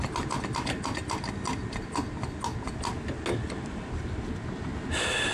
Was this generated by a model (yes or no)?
no